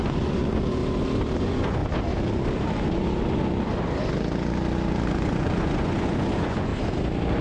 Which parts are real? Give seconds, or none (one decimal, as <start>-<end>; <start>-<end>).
0.8-1.4; 1.8-5.1; 6.7-7.4